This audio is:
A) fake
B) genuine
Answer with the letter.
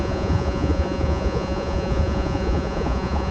A